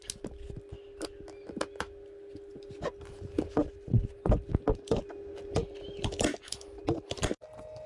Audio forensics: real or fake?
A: real